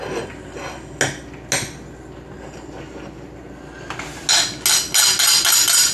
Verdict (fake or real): real